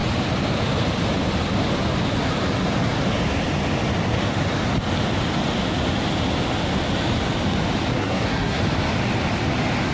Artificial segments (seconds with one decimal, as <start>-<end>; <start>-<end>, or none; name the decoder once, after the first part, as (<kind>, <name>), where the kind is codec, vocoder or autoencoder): 7.9-8.6 (codec, SNAC)